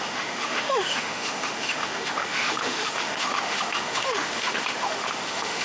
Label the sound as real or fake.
fake